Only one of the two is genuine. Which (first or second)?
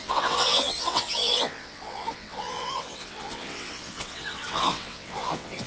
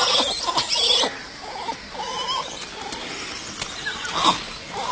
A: second